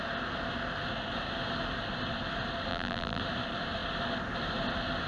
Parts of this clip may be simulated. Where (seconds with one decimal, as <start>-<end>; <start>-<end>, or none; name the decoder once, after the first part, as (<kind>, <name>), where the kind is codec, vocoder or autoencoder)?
2.7-3.2 (vocoder, BigVGAN v2)